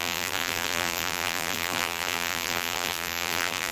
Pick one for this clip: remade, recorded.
remade